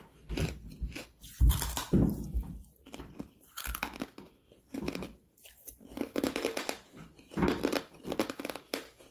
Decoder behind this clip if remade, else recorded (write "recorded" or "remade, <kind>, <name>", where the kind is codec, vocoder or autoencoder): remade, vocoder, BigVGAN v2